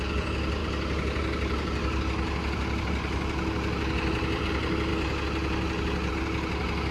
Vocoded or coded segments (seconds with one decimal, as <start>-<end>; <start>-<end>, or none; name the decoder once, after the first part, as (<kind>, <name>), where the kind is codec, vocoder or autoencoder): none